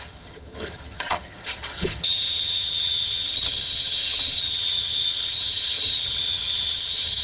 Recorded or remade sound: remade